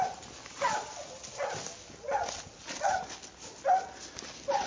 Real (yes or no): yes